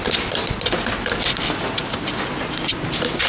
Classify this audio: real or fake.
real